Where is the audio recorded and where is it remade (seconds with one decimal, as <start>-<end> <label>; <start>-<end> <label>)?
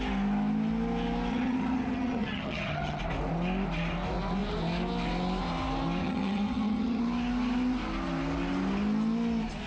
0.0-1.3 recorded; 1.3-3.0 remade; 3.0-6.0 recorded; 6.0-7.0 remade; 7.0-9.7 recorded